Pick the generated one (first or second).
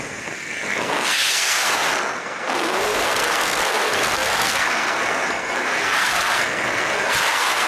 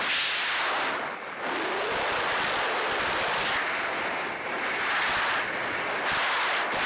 first